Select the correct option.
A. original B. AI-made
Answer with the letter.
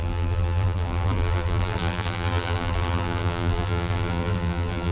B